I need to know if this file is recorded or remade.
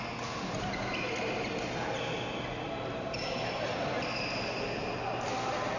recorded